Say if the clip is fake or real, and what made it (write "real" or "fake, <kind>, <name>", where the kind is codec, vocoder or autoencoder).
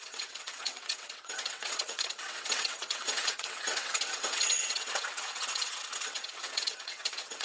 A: fake, vocoder, WaveNeXt